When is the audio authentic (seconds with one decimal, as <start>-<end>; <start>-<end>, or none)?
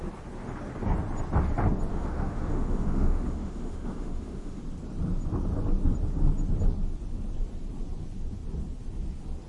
0.0-1.9; 4.6-9.5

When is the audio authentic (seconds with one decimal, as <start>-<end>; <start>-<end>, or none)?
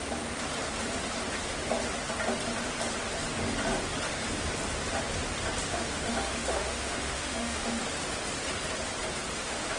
0.0-5.7; 7.8-9.3